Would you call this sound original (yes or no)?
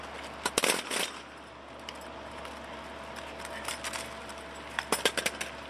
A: yes